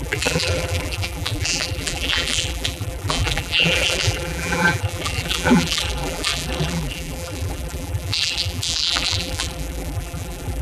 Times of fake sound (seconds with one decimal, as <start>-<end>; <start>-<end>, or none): 0.0-10.6